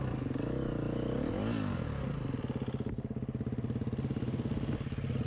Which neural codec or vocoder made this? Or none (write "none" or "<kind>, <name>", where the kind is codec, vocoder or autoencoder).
none